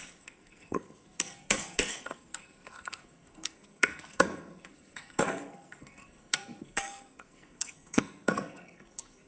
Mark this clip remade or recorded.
remade